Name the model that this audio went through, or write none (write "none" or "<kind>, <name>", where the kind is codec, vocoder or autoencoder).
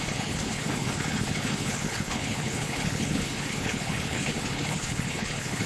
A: codec, HILCodec